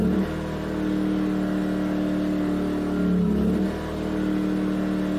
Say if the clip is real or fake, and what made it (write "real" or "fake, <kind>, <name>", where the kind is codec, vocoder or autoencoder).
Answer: real